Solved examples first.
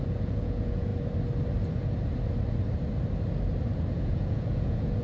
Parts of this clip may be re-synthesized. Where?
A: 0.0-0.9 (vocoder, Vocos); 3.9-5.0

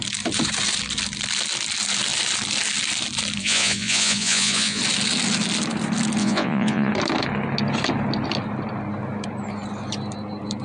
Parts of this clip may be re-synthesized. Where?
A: 3.4-4.8 (vocoder, Vocos); 6.2-6.9

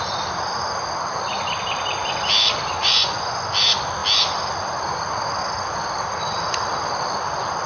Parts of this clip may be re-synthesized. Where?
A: 2.8-3.5 (vocoder, Vocos)

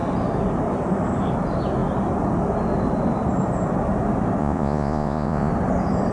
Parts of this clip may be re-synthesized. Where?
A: 4.4-5.5 (vocoder, Vocos)

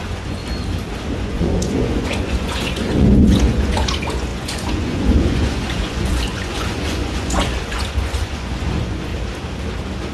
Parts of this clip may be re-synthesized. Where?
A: 0.0-0.4 (vocoder, Vocos); 1.2-9.1

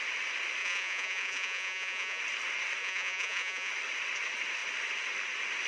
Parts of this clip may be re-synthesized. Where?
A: 0.6-2.2 (vocoder, Vocos); 2.8-3.7

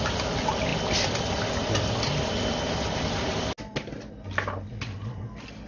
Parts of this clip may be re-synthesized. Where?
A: none